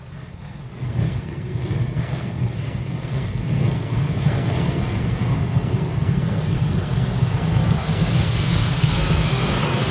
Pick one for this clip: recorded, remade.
remade